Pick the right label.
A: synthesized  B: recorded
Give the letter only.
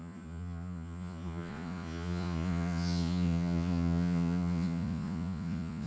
A